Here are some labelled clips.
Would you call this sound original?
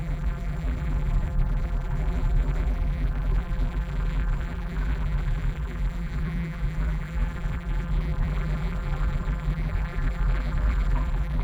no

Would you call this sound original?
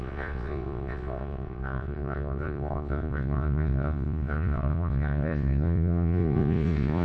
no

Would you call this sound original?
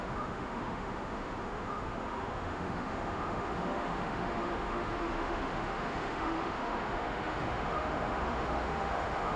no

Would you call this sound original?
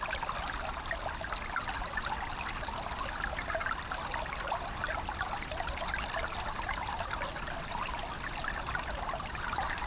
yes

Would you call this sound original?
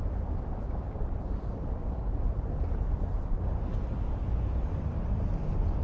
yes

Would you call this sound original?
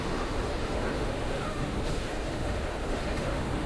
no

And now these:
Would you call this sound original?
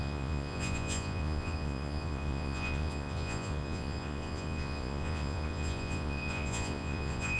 no